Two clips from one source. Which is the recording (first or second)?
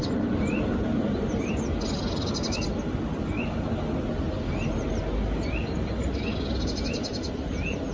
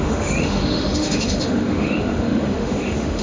first